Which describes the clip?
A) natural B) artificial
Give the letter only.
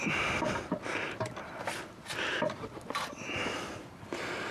A